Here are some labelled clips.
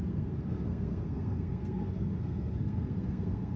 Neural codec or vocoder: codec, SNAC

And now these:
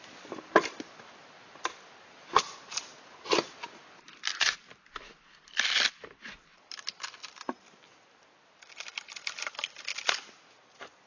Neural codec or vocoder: none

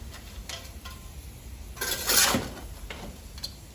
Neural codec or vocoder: none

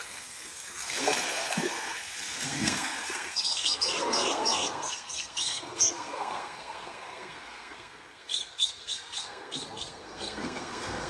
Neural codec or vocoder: codec, SNAC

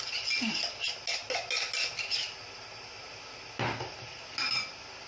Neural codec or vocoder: none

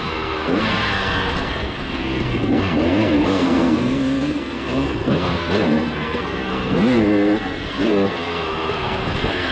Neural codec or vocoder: codec, SNAC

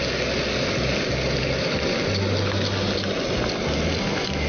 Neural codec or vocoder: none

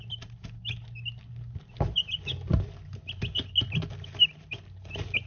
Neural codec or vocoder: none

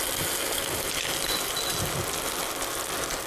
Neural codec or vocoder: none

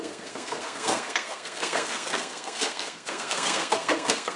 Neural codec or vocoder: codec, SNAC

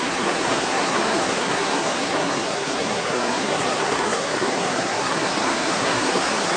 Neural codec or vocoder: codec, SNAC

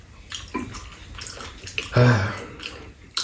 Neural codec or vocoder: none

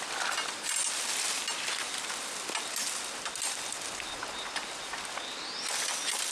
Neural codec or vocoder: none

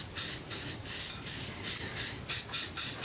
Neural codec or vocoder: none